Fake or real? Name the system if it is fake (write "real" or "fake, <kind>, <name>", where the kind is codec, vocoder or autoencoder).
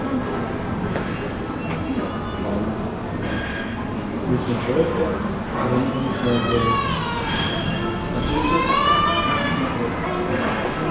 real